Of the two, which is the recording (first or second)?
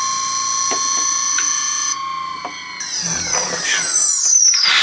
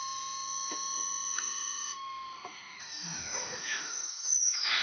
first